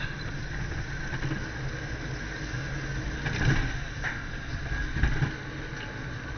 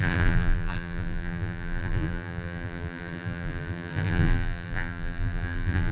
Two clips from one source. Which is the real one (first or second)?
first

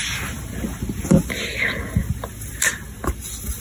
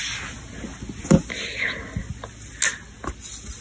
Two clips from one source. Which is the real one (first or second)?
second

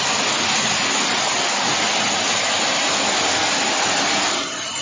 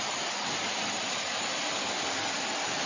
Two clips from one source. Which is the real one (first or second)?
first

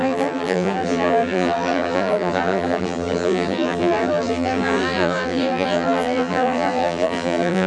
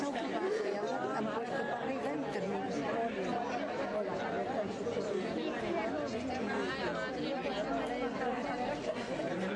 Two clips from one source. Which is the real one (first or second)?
second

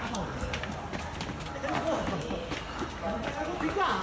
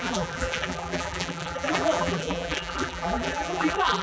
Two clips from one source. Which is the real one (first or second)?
first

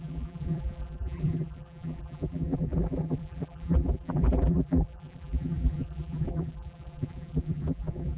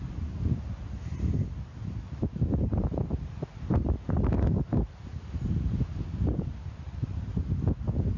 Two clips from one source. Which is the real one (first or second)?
second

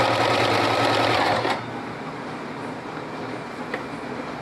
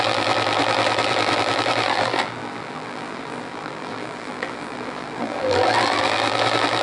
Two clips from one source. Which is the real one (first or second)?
first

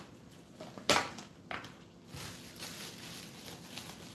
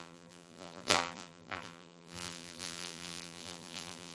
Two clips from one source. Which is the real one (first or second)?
first